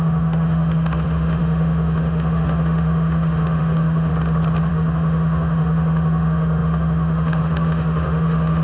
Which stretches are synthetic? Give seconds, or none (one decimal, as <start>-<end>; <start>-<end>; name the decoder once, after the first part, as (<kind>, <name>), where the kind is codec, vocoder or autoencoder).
0.0-4.1 (autoencoder, DAC-VAE); 4.7-8.6